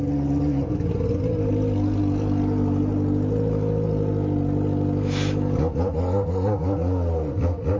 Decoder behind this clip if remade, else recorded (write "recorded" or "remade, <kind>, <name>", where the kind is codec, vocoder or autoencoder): recorded